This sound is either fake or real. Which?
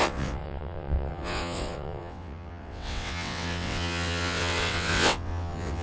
fake